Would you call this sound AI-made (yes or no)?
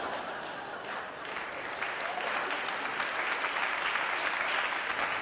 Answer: no